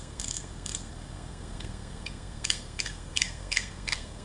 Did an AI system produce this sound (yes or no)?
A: yes